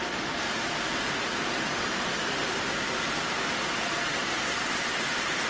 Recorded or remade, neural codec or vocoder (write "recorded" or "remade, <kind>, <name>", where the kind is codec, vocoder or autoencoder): remade, vocoder, BigVGAN v2